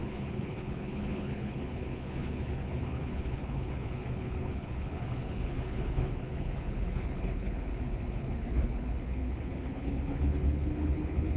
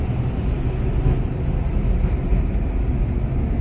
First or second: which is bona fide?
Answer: second